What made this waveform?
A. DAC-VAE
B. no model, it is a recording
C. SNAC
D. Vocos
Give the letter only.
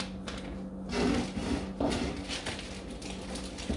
B